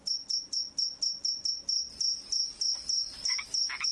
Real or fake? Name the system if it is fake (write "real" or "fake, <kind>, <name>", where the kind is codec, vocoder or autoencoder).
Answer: real